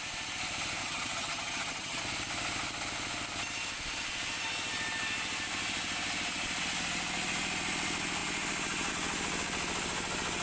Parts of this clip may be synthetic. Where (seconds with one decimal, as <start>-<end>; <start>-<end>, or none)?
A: 0.8-2.0